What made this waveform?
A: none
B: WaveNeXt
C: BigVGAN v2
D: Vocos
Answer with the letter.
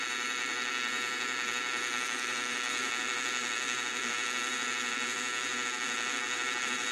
C